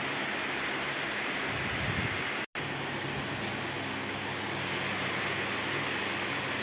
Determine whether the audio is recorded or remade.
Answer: recorded